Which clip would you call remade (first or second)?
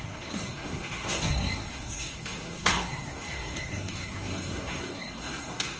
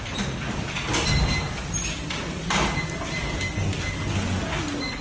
first